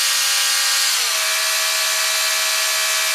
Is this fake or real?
real